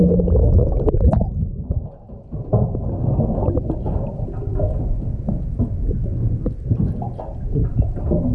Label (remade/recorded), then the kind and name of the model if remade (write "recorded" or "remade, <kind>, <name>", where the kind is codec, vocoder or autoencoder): recorded